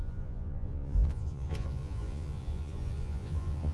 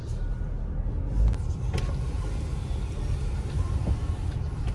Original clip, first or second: second